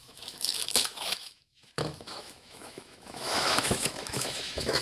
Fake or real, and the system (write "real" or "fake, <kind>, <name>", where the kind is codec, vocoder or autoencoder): fake, autoencoder, DAC-VAE